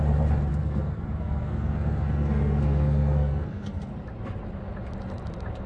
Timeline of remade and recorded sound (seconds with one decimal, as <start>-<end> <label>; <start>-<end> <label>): 0.0-0.5 recorded; 0.5-3.9 remade; 3.9-5.7 recorded